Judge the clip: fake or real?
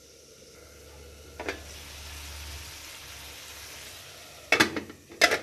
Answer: real